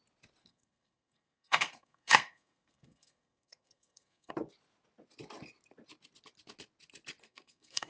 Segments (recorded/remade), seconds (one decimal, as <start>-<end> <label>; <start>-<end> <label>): 0.0-0.4 recorded; 0.4-4.3 remade; 4.3-7.2 recorded; 7.2-7.9 remade